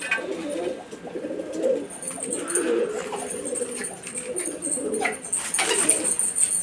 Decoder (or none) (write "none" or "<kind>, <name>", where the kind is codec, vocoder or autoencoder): none